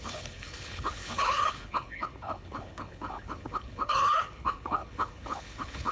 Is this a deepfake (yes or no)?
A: yes